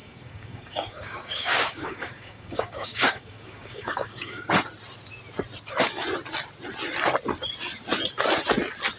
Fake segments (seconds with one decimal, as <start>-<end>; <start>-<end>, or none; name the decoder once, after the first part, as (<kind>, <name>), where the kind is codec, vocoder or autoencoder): 0.0-4.5 (codec, DAC)